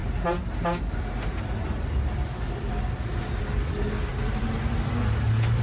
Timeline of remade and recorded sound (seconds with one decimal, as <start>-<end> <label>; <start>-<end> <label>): 0.0-5.6 recorded